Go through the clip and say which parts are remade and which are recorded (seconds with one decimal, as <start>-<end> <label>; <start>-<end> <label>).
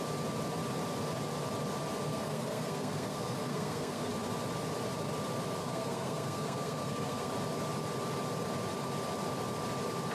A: 0.0-2.1 recorded; 2.1-4.1 remade; 4.1-5.6 recorded; 5.6-7.3 remade; 7.3-10.1 recorded